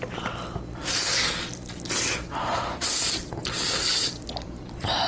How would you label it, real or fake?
real